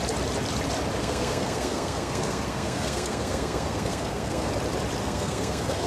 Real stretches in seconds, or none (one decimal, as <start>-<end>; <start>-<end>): 0.0-1.0; 4.5-5.0